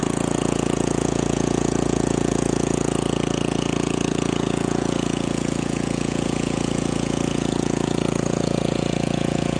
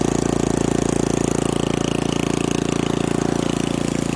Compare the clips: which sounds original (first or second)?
second